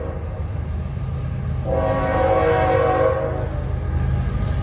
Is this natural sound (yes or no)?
yes